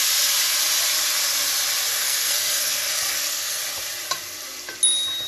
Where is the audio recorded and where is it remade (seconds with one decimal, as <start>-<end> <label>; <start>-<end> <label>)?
0.0-1.9 recorded; 1.9-3.6 remade; 3.6-5.3 recorded